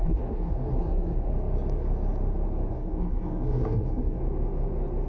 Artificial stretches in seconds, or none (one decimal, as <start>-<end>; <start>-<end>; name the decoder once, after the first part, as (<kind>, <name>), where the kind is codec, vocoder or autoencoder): 0.0-1.3 (codec, SNAC); 2.7-4.2